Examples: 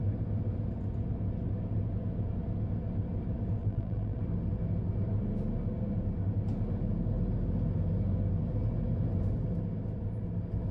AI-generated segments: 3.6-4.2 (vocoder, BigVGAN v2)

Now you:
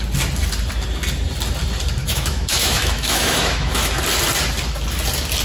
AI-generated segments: 2.0-4.0 (autoencoder, DAC-VAE)

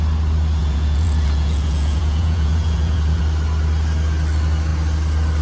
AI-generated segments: 0.6-3.2 (vocoder, Vocos)

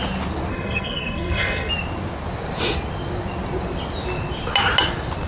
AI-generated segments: 0.5-1.7 (codec, SNAC)

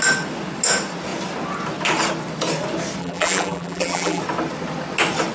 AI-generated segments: 3.0-4.2 (vocoder, BigVGAN v2)

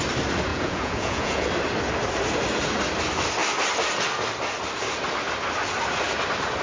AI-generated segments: 0.5-1.5 (vocoder, Vocos)